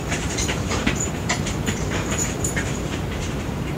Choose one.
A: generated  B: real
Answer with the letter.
A